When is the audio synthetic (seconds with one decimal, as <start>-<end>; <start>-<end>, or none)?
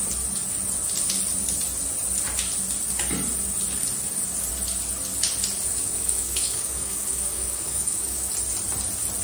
5.7-8.3